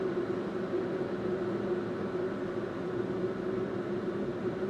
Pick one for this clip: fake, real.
real